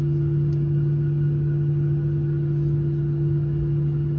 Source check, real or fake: real